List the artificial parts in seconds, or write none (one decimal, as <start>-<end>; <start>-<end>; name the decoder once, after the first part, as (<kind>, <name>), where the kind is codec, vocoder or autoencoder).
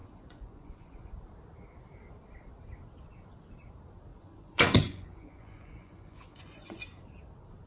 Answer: 0.0-1.1 (vocoder, Vocos); 4.1-6.8